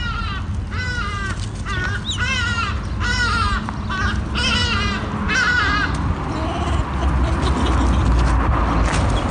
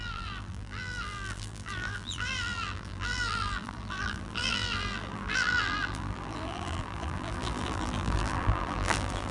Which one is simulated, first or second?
second